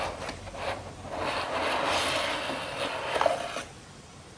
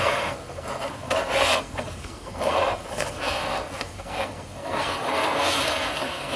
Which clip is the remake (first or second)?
second